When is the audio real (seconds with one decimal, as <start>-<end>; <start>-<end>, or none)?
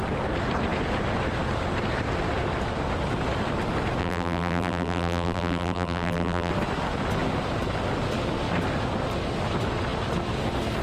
0.0-4.0; 6.5-10.8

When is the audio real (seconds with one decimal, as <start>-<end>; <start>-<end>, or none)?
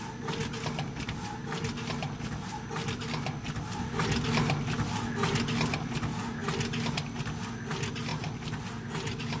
0.0-9.4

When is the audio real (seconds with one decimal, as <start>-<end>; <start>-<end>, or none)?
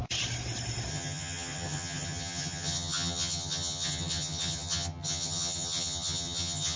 0.0-0.9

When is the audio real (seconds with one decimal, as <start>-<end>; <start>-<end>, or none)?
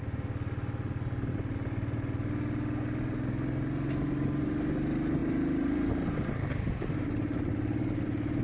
0.0-5.2; 5.9-8.4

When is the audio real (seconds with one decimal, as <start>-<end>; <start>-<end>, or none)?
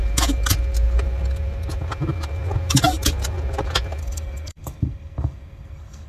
0.0-4.0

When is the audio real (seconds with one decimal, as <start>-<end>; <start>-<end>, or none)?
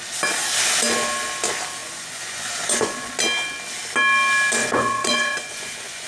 0.0-1.8; 3.1-4.6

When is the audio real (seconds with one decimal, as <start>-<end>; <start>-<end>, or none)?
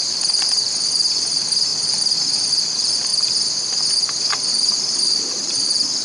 1.7-2.5; 3.1-4.7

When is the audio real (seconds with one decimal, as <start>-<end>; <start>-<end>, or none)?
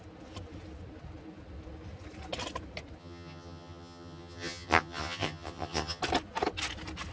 0.0-3.0; 6.0-7.1